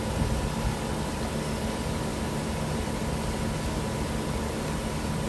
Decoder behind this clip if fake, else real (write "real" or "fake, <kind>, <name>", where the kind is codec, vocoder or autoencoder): real